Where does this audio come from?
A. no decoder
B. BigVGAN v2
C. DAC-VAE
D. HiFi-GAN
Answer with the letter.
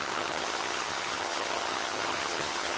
D